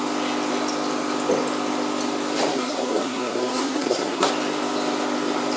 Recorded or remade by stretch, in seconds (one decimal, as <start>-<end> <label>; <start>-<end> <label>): 0.0-2.5 recorded; 2.5-4.3 remade; 4.3-5.6 recorded